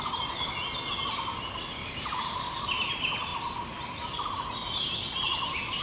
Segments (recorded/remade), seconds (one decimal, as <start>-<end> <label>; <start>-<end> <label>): 0.0-1.8 recorded; 1.8-2.9 remade; 2.9-3.3 recorded; 3.3-4.9 remade; 4.9-5.8 recorded